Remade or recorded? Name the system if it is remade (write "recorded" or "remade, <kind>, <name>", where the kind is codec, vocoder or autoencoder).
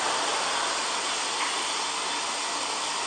recorded